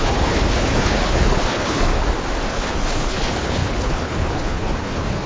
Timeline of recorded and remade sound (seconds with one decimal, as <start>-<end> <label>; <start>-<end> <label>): 0.0-1.9 remade; 1.9-2.5 recorded; 2.5-5.3 remade